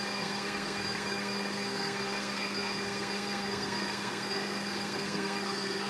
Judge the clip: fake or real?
fake